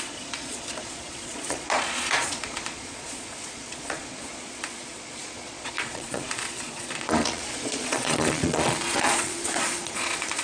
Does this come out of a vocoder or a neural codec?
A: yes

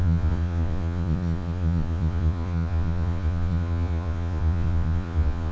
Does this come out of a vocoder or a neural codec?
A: yes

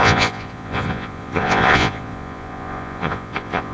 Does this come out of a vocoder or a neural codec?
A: yes